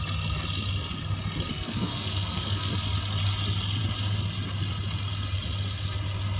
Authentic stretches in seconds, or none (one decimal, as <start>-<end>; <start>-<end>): 0.0-1.5; 2.7-6.4